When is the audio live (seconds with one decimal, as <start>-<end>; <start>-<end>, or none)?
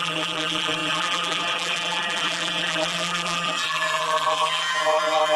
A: none